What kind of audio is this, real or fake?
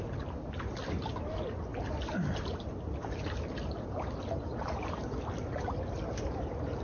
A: real